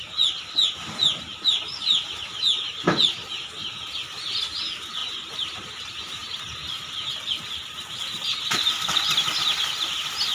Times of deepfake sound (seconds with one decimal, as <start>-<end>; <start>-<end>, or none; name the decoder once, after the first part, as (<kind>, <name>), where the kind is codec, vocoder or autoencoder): none